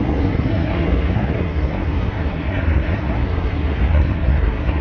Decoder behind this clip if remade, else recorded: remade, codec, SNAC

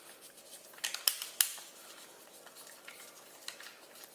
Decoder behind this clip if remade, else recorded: recorded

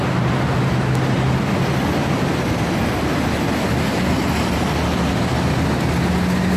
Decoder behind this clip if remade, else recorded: recorded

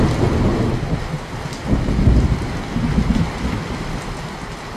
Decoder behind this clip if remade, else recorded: recorded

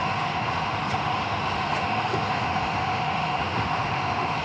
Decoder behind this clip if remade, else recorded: remade, autoencoder, DAC-VAE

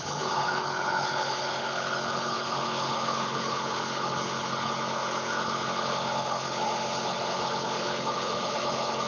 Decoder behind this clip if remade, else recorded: remade, codec, HILCodec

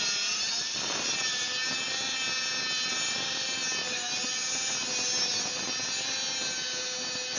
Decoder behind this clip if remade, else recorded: recorded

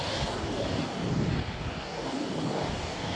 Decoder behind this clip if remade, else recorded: remade, codec, DAC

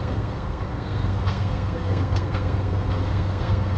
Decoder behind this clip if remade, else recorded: remade, codec, SNAC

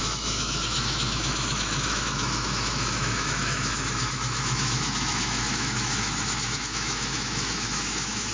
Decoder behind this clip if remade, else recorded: remade, autoencoder, DAC-VAE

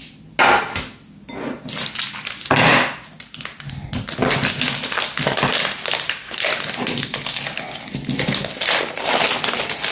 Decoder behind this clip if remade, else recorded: recorded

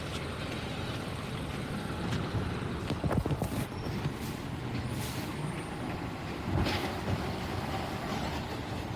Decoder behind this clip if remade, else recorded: recorded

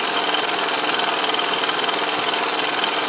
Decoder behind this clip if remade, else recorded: recorded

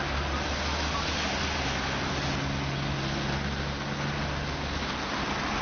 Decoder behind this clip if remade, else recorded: recorded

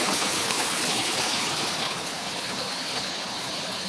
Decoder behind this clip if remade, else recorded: remade, codec, HILCodec